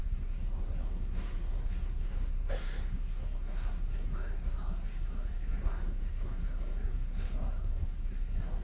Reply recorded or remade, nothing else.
remade